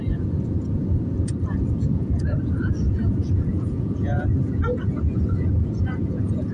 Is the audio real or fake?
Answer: fake